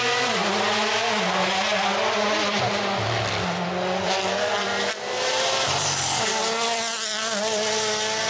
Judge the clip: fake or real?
real